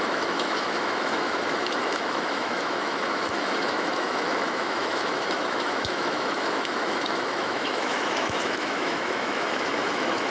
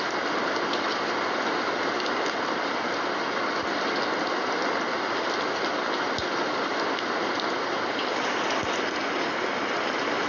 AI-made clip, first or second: first